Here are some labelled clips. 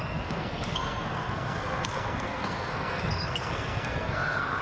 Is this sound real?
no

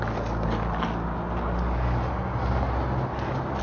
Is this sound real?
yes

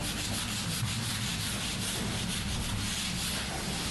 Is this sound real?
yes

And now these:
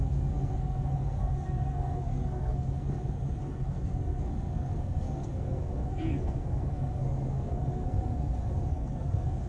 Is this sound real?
no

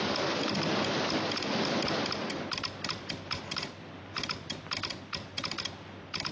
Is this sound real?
yes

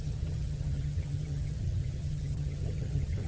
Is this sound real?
no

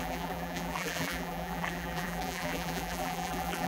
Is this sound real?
no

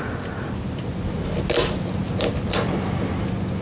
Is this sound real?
yes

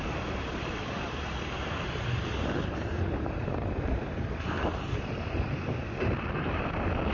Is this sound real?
yes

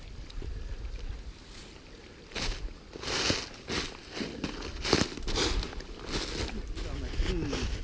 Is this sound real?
yes